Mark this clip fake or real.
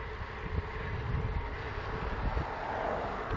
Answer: real